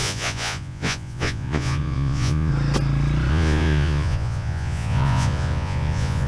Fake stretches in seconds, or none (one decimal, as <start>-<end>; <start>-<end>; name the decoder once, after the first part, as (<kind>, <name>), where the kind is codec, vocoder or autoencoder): 0.0-2.5 (vocoder, Vocos); 3.3-6.3